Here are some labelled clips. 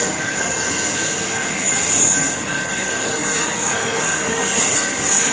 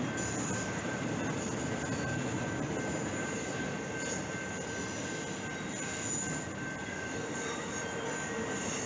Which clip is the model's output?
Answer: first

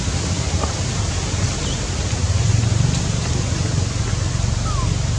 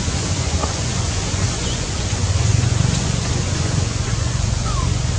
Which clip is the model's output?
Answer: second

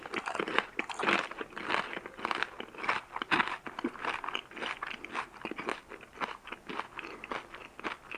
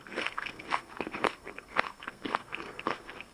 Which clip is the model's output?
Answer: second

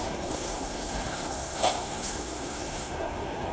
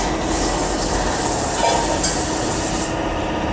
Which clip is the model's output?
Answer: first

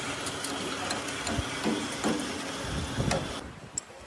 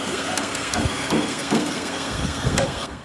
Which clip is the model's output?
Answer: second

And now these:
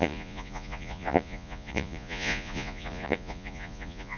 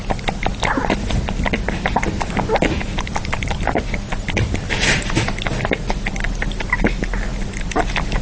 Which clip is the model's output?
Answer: first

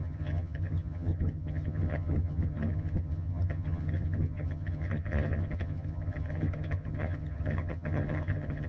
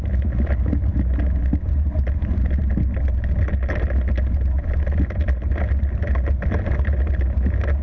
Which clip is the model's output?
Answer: first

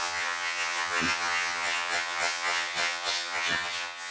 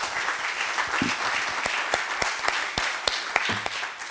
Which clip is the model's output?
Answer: first